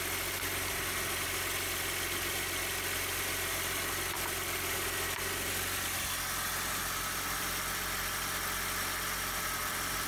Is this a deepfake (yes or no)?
no